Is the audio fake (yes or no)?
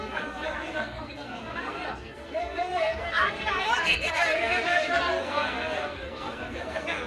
yes